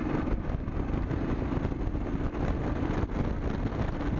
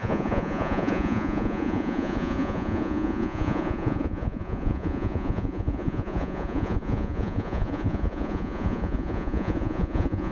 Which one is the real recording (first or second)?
first